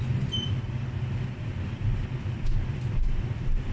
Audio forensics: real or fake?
fake